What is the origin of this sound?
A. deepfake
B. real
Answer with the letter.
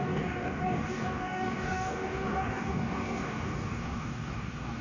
A